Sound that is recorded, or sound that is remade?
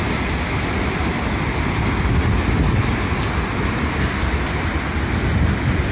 recorded